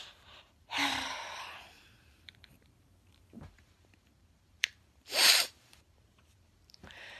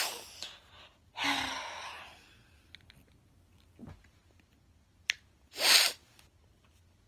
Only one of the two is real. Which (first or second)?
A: second